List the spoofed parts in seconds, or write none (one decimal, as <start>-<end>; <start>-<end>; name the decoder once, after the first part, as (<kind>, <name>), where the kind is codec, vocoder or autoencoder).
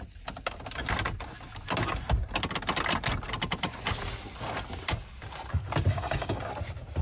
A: 5.9-6.5 (codec, DAC)